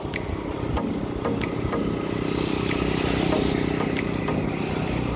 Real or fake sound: real